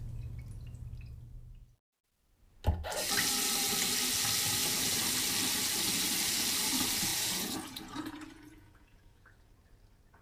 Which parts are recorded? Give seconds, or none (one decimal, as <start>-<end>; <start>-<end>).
0.0-7.1; 9.5-10.2